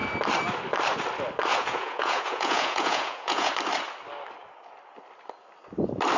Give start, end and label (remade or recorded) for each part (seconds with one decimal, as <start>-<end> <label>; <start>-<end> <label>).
0.0-1.5 recorded; 1.5-3.5 remade; 3.5-6.2 recorded